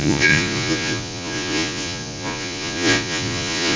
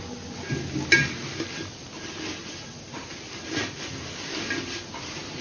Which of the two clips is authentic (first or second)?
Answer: second